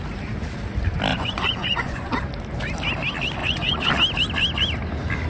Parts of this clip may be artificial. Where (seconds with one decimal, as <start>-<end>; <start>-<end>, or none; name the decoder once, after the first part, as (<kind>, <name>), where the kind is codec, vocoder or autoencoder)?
1.1-2.1 (vocoder, Vocos); 3.4-3.9